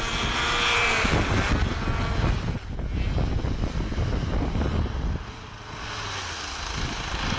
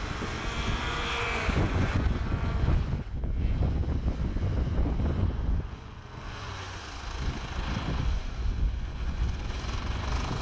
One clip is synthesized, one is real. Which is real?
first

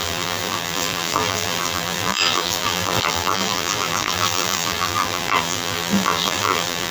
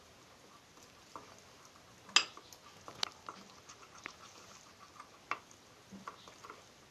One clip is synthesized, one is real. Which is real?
second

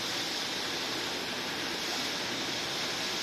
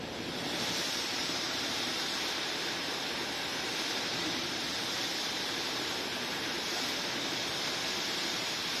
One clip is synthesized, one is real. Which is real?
first